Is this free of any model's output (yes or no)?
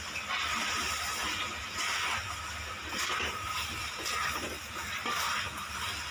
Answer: yes